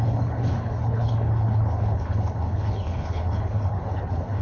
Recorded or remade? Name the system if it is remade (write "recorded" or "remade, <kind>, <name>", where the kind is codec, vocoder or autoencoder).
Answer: remade, codec, HILCodec